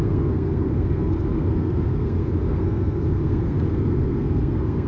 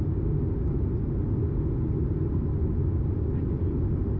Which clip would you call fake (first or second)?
first